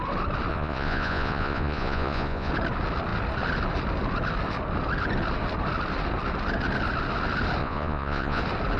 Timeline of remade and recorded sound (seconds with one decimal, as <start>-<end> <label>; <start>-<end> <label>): 0.0-0.5 recorded; 0.5-2.5 remade; 2.5-7.6 recorded; 7.6-8.4 remade; 8.4-8.8 recorded